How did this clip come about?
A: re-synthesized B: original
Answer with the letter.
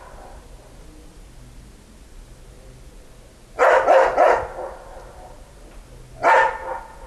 B